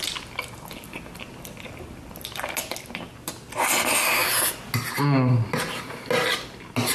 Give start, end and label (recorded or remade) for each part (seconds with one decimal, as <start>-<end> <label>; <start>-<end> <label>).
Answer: 0.0-6.9 recorded